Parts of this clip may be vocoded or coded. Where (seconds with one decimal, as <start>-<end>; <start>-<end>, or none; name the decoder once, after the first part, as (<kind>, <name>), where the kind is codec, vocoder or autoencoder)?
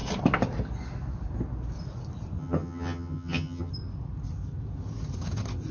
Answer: 2.4-3.7 (vocoder, HiFi-GAN)